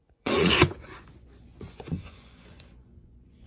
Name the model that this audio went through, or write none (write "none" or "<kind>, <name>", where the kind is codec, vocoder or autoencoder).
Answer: vocoder, Vocos